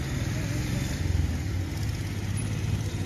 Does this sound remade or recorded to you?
recorded